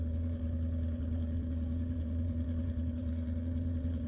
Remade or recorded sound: remade